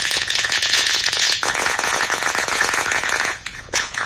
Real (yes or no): no